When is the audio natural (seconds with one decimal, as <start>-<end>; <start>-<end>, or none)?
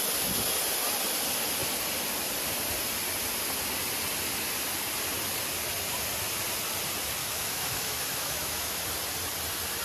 0.0-7.2; 8.8-9.8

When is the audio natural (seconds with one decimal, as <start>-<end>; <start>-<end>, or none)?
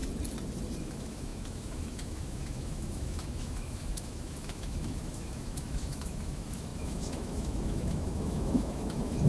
0.0-0.8